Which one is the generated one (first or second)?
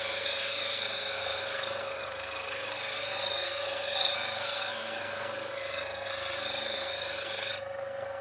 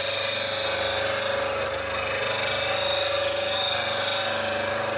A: first